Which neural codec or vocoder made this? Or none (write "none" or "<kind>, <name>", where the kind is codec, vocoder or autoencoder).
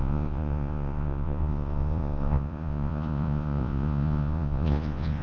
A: vocoder, Vocos